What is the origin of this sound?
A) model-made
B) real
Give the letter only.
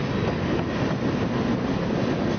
B